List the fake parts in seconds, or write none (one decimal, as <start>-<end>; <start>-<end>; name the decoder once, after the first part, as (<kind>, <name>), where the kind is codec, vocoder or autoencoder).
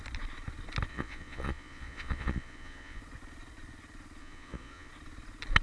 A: 0.9-3.0 (vocoder, Vocos); 4.2-4.9